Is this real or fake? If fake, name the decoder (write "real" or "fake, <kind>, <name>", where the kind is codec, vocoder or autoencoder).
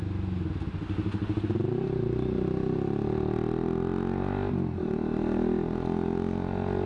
real